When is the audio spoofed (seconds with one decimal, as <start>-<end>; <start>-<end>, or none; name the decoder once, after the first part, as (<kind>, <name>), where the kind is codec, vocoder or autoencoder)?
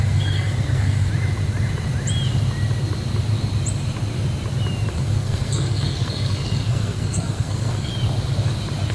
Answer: 0.0-1.1 (codec, SNAC); 4.9-7.9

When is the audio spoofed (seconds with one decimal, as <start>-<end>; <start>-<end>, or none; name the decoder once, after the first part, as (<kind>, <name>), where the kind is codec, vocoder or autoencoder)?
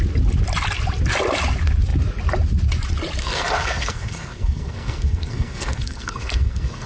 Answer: 3.2-6.9 (codec, SNAC)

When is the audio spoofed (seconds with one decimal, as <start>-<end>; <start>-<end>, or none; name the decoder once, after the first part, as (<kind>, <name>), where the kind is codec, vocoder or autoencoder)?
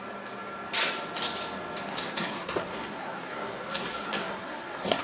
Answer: 1.9-5.0 (codec, SNAC)